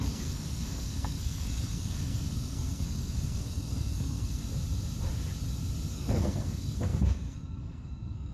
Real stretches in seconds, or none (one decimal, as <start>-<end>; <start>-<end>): 4.4-5.9